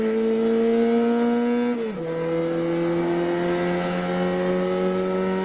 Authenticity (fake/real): real